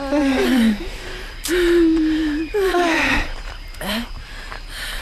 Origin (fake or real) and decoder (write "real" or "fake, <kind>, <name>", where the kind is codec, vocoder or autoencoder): fake, vocoder, BigVGAN v2